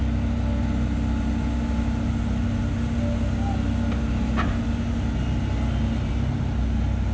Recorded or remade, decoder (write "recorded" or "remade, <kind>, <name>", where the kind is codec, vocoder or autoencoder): recorded